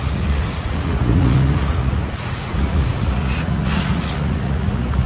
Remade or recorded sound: remade